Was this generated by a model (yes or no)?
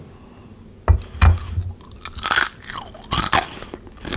no